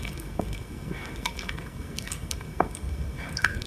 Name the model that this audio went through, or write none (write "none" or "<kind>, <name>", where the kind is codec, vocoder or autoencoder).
codec, SNAC